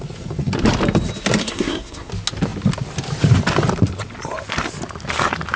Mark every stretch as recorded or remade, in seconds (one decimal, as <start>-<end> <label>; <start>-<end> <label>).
0.0-1.4 recorded; 1.4-2.1 remade; 2.1-5.6 recorded